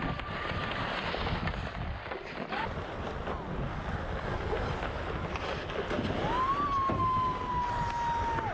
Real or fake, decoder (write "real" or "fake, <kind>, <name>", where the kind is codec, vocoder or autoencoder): real